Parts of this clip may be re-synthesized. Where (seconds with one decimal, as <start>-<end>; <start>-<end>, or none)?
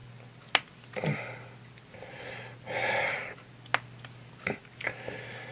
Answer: none